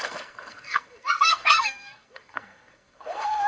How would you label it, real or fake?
fake